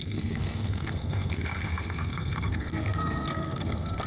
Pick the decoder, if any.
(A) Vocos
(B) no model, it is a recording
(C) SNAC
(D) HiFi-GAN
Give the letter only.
C